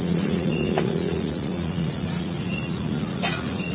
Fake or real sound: fake